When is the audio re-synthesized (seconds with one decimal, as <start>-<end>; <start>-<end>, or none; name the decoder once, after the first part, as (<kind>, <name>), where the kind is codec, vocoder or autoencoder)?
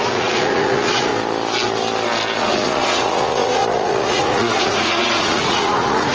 0.0-1.1 (vocoder, Vocos); 2.4-6.1